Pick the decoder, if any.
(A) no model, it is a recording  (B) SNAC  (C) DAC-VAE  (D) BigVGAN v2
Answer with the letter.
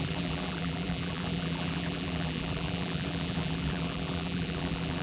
D